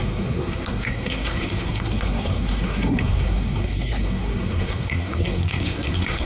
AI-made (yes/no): yes